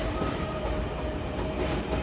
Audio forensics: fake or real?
real